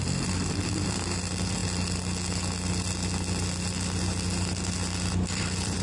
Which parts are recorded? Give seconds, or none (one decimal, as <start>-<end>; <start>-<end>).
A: 1.6-5.1